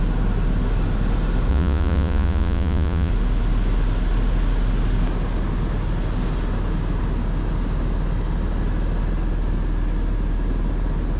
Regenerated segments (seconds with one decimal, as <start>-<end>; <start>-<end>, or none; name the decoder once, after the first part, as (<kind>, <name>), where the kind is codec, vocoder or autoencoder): 1.5-3.1 (vocoder, Vocos)